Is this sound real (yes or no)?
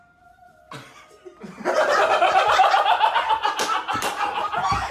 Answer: no